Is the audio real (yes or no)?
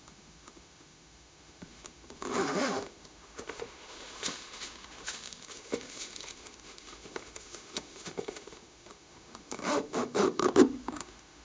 no